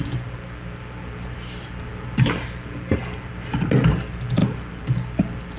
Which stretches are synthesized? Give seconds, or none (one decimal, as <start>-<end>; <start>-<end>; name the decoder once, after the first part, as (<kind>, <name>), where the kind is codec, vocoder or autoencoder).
none